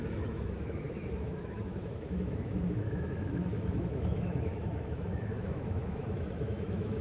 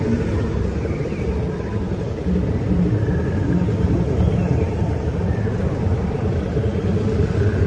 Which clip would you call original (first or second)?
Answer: second